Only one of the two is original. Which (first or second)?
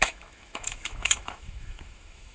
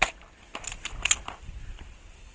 second